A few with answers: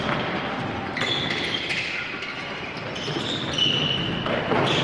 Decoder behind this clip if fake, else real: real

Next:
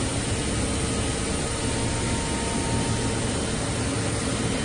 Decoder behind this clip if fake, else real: real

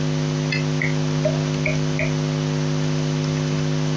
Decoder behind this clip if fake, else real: real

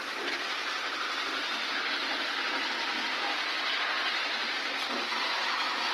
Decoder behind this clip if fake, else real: real